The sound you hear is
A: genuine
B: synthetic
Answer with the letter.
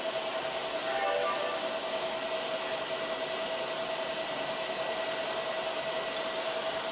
A